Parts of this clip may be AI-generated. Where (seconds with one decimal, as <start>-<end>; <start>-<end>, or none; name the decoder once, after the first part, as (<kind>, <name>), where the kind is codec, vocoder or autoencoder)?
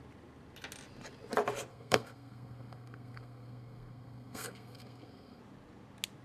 1.7-5.4 (codec, SNAC)